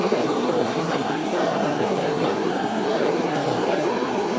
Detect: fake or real fake